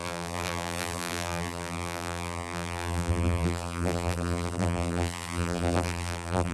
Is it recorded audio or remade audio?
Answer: remade